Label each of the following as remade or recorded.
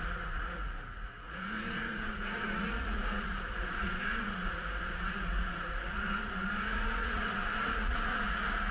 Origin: remade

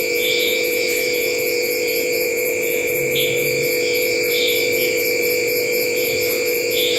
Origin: remade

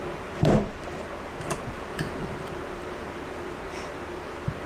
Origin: remade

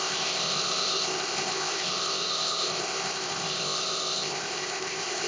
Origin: remade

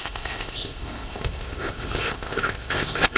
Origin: remade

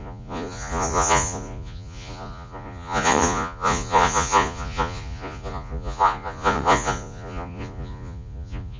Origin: remade